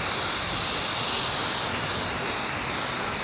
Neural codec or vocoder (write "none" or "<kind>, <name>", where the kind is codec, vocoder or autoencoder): none